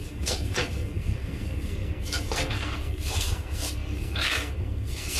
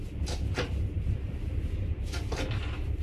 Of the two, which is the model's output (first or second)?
first